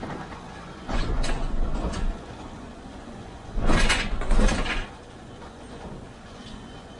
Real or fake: fake